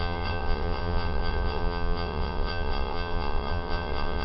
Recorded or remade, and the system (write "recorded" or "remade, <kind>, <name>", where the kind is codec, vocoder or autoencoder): remade, vocoder, WaveNeXt